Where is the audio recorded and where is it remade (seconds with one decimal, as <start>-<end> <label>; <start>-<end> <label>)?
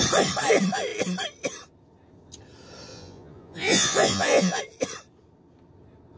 0.0-2.9 recorded; 2.9-4.6 remade; 4.6-6.2 recorded